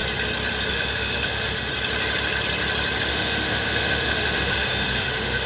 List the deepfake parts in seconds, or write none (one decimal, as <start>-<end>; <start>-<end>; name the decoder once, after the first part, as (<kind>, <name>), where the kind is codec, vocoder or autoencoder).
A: 0.7-1.7 (autoencoder, DAC-VAE); 3.1-5.5